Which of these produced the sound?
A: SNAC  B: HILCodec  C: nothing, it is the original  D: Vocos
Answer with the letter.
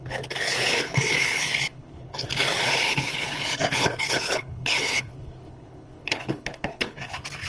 B